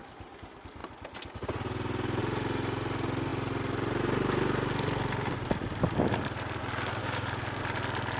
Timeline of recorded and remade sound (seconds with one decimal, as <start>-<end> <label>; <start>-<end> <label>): 0.0-7.0 recorded; 7.0-7.6 remade; 7.6-8.2 recorded